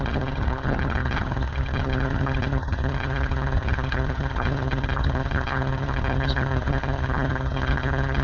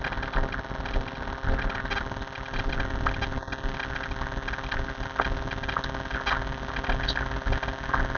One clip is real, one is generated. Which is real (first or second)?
second